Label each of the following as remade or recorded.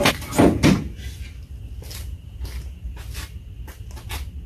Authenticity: recorded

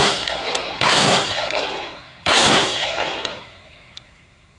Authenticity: remade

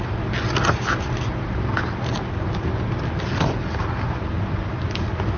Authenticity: recorded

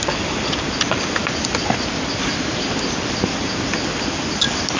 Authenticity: recorded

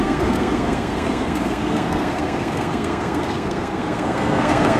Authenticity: remade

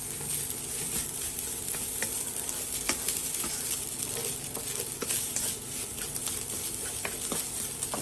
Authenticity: recorded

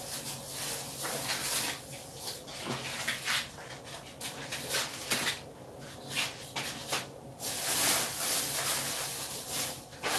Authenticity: recorded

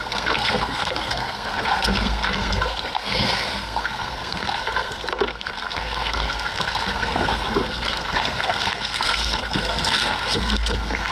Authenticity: remade